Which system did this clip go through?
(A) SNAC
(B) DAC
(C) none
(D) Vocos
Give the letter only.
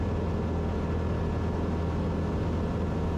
C